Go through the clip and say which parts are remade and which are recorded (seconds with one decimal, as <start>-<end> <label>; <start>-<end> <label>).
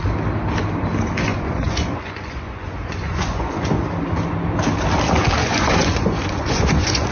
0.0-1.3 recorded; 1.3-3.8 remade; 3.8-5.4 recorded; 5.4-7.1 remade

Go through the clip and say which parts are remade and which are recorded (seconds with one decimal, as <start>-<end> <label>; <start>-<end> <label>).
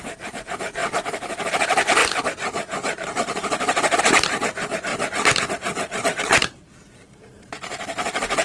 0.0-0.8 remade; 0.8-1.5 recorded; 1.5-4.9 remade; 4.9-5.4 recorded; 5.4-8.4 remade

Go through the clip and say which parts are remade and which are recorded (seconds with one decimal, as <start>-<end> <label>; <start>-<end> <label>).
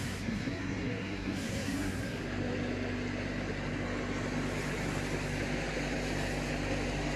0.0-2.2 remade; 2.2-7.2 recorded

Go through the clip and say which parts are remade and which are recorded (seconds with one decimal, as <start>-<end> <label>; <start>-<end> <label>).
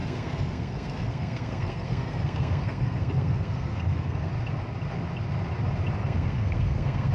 0.0-4.3 remade; 4.3-6.0 recorded; 6.0-7.1 remade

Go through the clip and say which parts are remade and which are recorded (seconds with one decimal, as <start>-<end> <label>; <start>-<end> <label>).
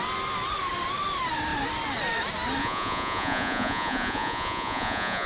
0.0-2.6 recorded; 2.6-5.3 remade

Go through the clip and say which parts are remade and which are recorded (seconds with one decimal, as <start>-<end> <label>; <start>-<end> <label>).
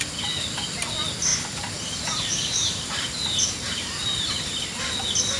0.0-1.3 recorded; 1.3-4.5 remade; 4.5-5.4 recorded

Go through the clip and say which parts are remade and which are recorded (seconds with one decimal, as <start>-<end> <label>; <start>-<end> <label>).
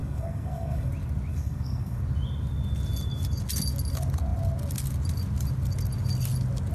0.0-0.9 remade; 0.9-1.3 recorded; 1.3-2.0 remade; 2.0-6.7 recorded